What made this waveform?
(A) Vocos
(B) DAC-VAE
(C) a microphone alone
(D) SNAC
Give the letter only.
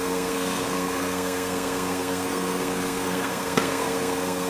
D